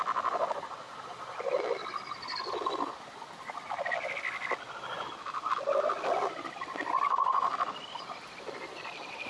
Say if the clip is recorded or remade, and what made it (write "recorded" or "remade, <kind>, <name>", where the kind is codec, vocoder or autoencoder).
recorded